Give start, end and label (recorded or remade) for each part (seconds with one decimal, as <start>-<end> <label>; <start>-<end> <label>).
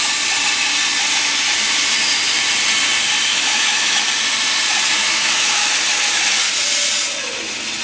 0.0-3.3 recorded; 3.3-4.0 remade; 4.0-5.0 recorded; 5.0-5.7 remade; 5.7-7.8 recorded